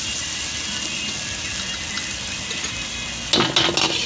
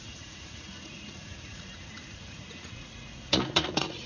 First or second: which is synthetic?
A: second